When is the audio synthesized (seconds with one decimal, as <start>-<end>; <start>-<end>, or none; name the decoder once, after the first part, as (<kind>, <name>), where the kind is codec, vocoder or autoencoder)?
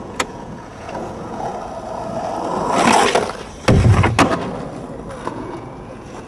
0.0-1.5 (vocoder, Vocos); 5.3-6.3